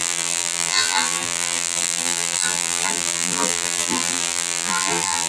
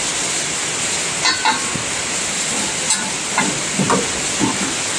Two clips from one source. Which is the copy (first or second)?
first